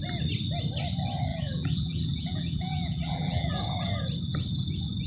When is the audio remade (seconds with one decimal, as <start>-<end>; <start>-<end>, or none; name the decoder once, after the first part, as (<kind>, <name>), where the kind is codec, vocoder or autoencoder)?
1.3-3.5 (vocoder, BigVGAN v2)